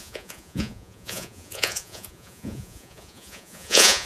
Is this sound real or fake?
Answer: fake